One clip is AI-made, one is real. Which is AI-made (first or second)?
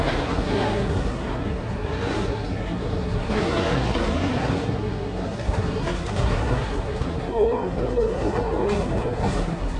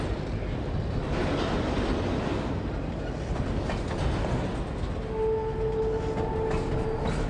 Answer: first